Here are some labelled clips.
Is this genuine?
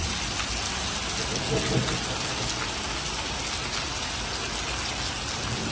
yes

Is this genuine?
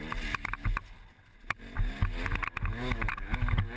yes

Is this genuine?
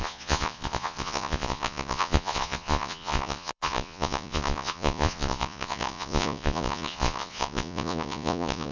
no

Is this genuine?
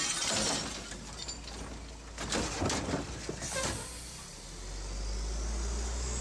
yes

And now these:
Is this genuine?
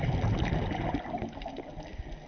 yes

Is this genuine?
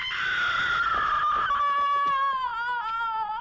yes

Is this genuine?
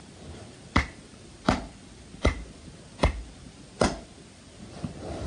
yes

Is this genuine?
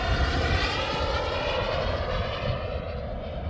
yes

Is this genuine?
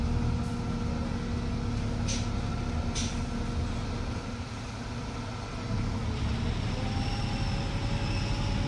yes